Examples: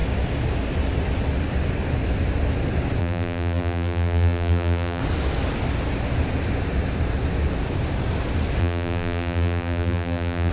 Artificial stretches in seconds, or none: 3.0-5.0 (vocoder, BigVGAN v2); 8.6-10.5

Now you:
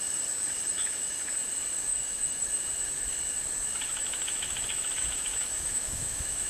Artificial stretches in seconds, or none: 0.7-1.3 (autoencoder, DAC-VAE); 1.9-2.4; 3.9-6.5

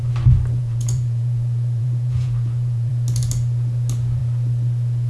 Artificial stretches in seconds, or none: 0.6-2.9 (vocoder, Vocos)

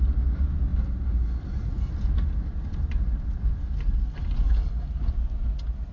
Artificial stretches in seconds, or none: 0.7-4.2 (vocoder, BigVGAN v2)

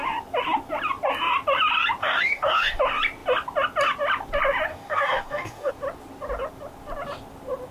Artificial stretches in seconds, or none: 2.0-2.8 (codec, DAC); 4.7-5.7